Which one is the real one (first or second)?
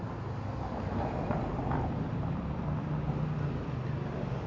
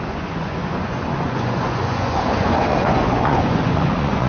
first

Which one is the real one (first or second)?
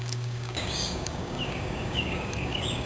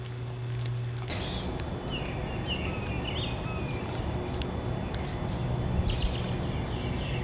second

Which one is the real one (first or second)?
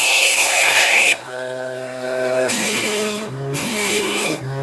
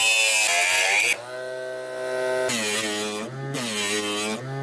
second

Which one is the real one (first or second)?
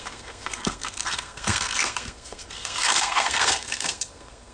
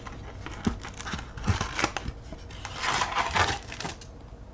second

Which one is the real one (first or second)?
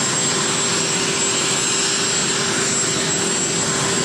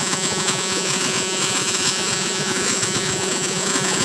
first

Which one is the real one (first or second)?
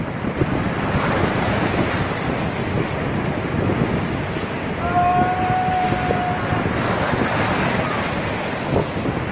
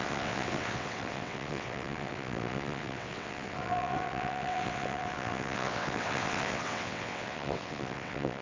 first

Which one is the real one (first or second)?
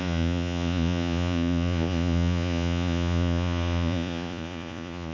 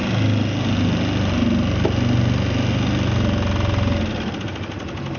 second